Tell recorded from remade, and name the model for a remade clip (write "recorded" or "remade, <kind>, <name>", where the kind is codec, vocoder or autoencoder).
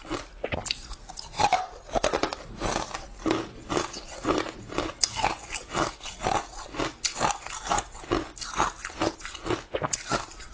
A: recorded